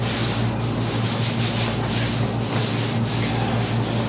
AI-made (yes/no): no